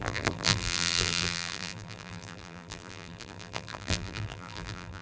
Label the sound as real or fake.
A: fake